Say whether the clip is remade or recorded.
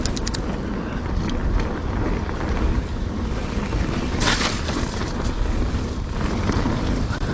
recorded